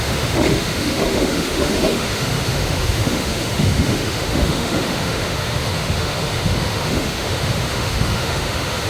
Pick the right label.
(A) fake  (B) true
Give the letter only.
A